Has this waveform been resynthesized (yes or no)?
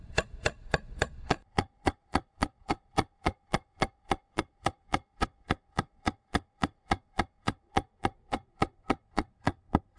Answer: yes